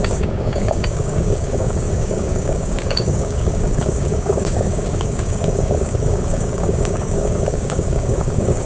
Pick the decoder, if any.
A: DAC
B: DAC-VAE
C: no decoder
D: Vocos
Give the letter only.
A